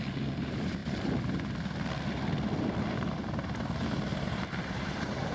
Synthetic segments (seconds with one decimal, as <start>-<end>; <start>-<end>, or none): 0.0-0.8; 2.8-5.3